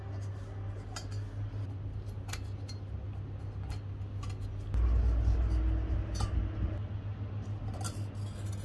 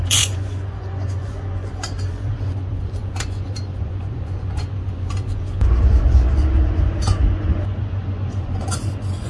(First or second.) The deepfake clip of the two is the second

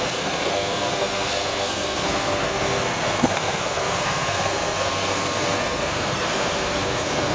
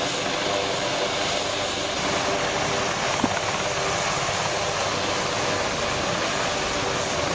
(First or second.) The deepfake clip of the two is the first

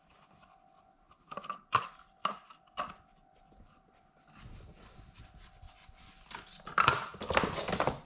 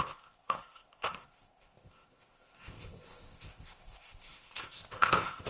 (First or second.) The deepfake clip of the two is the second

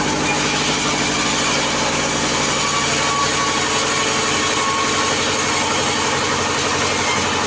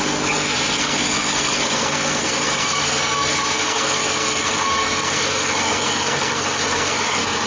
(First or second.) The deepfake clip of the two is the second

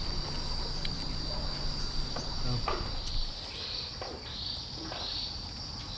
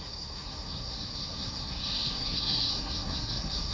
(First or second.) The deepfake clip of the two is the second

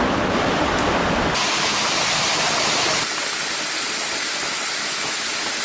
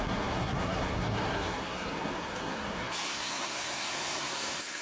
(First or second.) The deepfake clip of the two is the second